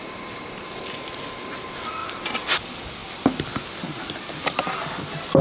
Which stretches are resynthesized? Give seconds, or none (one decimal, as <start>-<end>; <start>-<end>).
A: none